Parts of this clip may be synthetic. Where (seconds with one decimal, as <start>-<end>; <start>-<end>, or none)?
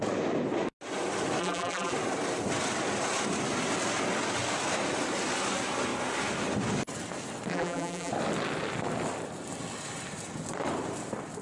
1.4-1.9; 7.5-8.1